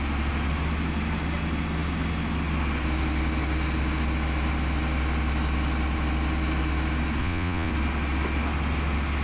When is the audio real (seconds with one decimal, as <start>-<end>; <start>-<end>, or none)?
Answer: 0.0-7.2; 7.7-9.2